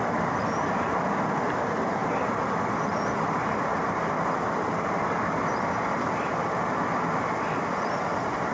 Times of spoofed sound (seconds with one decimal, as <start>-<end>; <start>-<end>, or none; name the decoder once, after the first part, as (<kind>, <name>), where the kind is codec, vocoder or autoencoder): none

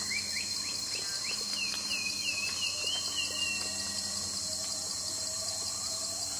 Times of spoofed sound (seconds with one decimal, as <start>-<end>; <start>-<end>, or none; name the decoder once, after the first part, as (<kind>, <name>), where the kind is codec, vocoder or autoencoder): none

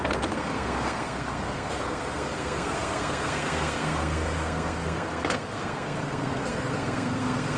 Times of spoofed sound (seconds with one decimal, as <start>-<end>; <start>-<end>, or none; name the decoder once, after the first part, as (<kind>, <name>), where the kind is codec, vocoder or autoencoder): 0.0-7.6 (codec, SNAC)

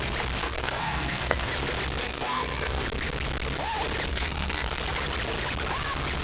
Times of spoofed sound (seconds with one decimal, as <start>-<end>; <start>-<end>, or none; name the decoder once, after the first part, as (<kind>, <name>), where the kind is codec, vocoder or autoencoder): 0.4-1.5 (codec, SNAC); 2.0-2.8; 4.1-4.8

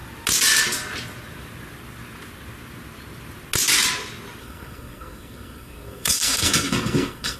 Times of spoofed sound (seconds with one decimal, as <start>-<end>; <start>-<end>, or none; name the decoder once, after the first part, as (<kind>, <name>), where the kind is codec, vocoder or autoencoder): 4.4-7.4 (codec, SNAC)

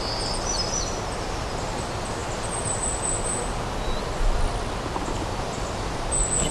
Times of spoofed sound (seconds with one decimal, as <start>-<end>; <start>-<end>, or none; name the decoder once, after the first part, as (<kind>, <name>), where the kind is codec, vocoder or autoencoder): none

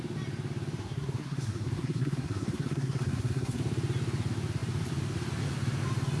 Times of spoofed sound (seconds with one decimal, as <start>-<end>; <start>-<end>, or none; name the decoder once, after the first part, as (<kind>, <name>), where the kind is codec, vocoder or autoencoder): 0.8-3.6 (codec, SNAC)

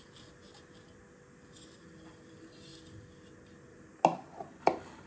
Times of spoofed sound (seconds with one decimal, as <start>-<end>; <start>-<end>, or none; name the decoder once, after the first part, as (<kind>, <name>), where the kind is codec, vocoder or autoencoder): none